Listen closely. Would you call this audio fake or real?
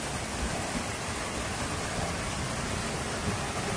real